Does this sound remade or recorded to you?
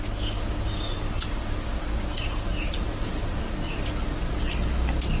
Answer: recorded